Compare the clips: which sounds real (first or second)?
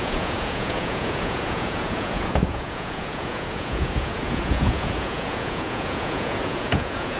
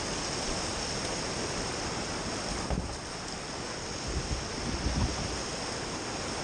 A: second